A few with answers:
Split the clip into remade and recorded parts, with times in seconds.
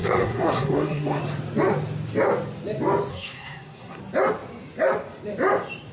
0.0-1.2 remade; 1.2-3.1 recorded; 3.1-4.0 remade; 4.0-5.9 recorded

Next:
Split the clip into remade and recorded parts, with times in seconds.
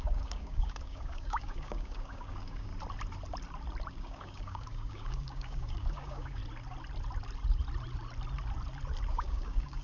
0.0-2.7 remade; 2.7-3.9 recorded; 3.9-6.4 remade; 6.4-9.1 recorded; 9.1-9.8 remade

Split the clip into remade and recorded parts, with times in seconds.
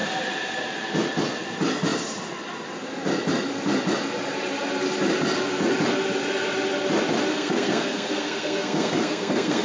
0.0-7.3 recorded; 7.3-9.6 remade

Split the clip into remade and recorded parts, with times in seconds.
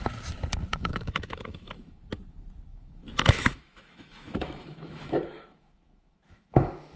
0.0-0.7 recorded; 0.7-2.0 remade; 2.0-2.7 recorded; 2.7-7.0 remade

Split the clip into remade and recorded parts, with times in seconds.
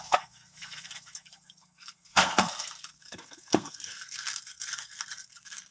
0.0-5.7 remade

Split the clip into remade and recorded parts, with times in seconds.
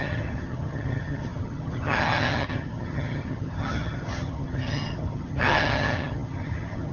0.0-6.9 remade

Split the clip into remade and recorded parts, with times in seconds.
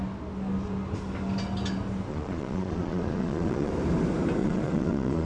0.0-2.1 recorded; 2.1-3.7 remade; 3.7-4.4 recorded; 4.4-5.3 remade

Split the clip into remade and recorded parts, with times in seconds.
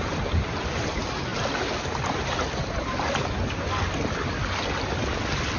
0.0-5.6 recorded